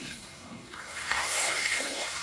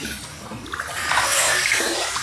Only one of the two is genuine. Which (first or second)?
second